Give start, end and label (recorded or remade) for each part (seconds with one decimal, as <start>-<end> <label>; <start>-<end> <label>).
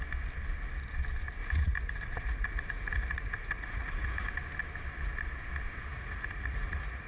0.0-1.4 recorded; 1.4-4.3 remade; 4.3-5.9 recorded; 5.9-7.1 remade